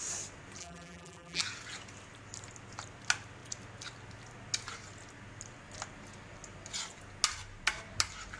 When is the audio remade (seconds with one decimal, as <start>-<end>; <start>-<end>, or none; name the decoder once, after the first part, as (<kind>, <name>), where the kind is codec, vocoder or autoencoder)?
0.6-1.4 (vocoder, BigVGAN v2)